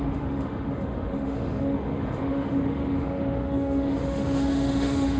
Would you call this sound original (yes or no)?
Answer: no